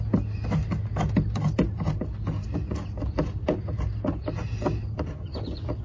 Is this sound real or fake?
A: real